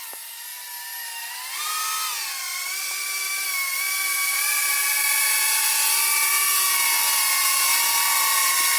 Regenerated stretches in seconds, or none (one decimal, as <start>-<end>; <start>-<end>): 7.4-8.8